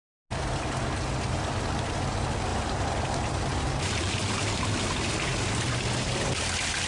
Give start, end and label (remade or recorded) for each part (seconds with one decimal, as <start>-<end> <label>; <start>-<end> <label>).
0.0-2.5 recorded; 2.5-4.5 remade; 4.5-6.9 recorded